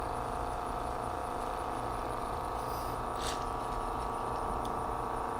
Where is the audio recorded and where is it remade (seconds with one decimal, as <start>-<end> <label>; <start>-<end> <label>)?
0.0-1.2 remade; 1.2-2.2 recorded; 2.2-5.4 remade